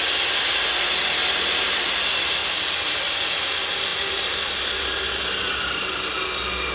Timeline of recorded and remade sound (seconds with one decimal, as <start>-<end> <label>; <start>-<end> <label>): 0.0-2.4 recorded; 2.4-3.3 remade; 3.3-3.9 recorded; 3.9-4.4 remade; 4.4-6.7 recorded